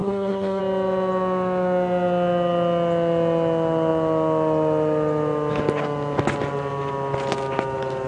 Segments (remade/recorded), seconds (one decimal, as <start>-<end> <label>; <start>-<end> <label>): 0.0-0.6 remade; 0.6-8.1 recorded